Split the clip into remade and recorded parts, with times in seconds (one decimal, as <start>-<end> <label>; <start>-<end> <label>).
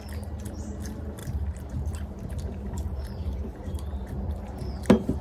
0.0-1.2 recorded; 1.2-4.1 remade; 4.1-5.2 recorded